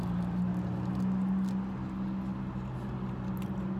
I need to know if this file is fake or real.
real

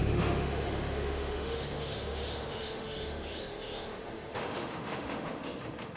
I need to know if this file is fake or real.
fake